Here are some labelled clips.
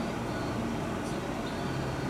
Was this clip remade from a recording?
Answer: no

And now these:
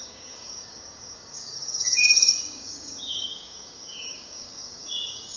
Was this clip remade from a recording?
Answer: yes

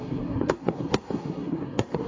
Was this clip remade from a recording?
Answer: yes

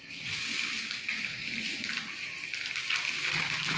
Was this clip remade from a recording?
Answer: no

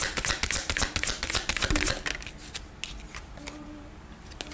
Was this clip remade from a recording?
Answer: no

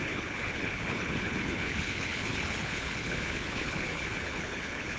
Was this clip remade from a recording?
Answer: yes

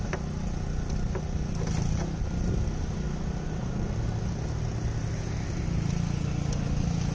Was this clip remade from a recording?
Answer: no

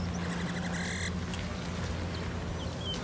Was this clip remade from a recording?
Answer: no